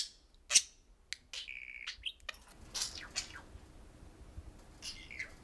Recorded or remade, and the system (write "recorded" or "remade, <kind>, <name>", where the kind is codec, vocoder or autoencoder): recorded